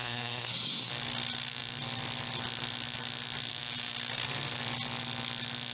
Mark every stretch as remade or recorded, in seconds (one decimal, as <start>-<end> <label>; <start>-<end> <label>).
0.0-0.9 remade; 0.9-5.7 recorded

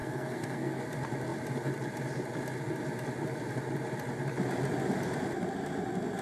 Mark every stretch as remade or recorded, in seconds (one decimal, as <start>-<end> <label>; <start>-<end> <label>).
0.0-0.8 remade; 0.8-6.2 recorded

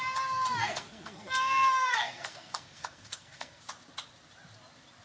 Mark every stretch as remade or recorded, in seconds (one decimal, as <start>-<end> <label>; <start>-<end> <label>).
0.0-0.6 recorded; 0.6-3.6 remade; 3.6-5.0 recorded

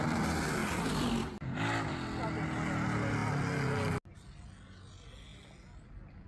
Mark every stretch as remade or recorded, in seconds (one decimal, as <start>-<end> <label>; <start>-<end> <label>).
0.0-6.3 recorded

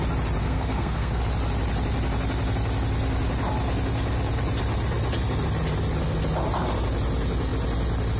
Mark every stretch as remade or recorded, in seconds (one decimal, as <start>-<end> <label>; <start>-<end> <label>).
0.0-0.4 recorded; 0.4-1.2 remade; 1.2-8.2 recorded

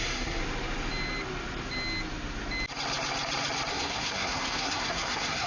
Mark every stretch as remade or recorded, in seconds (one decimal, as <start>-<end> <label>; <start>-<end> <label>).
0.0-0.4 remade; 0.4-3.7 recorded; 3.7-5.5 remade